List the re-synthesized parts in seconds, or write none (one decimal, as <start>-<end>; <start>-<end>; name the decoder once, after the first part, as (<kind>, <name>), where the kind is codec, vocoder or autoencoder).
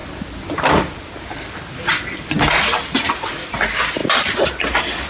none